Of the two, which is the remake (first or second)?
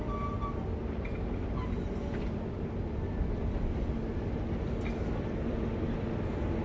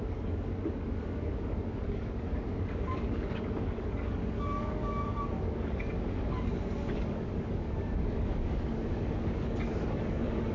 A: second